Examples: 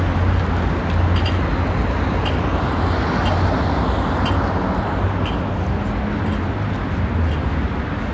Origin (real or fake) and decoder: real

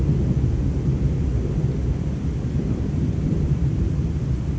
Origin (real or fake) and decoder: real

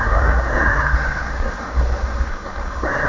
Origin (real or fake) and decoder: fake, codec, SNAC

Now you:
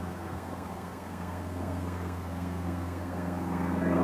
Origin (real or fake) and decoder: fake, codec, SNAC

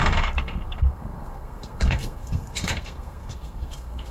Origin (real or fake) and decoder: fake, codec, SNAC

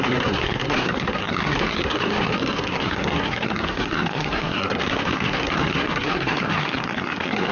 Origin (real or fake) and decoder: fake, codec, SNAC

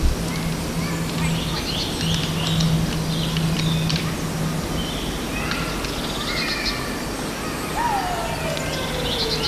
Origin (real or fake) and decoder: real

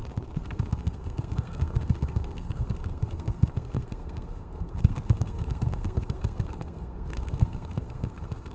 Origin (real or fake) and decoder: fake, codec, SNAC